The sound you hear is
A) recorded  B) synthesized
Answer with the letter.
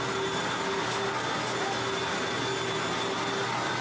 A